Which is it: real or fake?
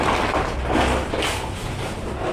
real